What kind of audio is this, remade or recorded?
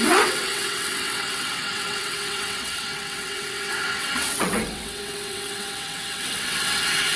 remade